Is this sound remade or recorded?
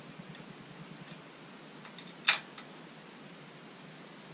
recorded